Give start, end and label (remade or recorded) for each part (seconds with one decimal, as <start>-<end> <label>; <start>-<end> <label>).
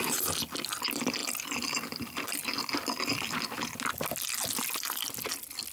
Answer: 0.0-5.7 recorded